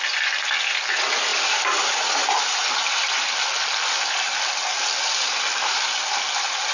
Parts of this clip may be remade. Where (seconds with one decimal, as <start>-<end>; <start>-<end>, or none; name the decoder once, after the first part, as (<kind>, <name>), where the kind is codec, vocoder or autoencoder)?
none